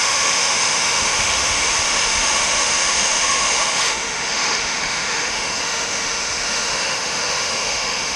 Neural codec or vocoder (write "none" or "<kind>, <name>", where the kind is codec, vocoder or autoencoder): autoencoder, DAC-VAE